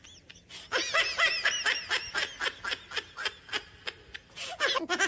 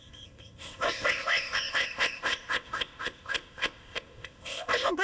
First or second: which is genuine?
first